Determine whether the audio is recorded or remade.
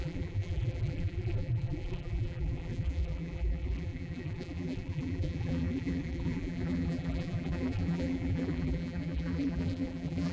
remade